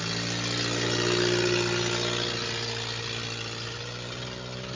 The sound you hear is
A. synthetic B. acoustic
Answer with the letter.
B